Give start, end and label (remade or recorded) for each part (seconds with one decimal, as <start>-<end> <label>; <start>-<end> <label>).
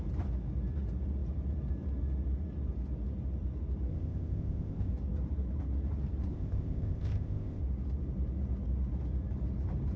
0.0-3.9 recorded; 3.9-4.9 remade; 4.9-6.3 recorded; 6.3-7.6 remade; 7.6-10.0 recorded